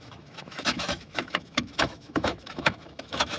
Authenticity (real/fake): fake